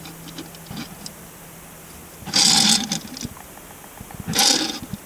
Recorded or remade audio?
recorded